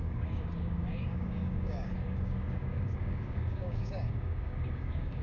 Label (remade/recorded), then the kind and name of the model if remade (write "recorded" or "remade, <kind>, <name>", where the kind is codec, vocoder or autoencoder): remade, codec, DAC